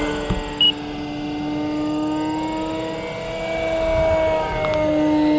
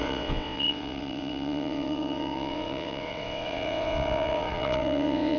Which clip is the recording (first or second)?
first